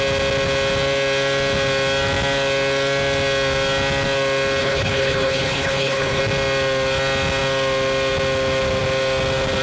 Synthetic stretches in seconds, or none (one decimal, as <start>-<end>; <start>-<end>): 4.6-6.2